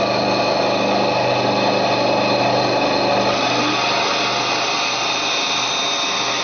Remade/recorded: recorded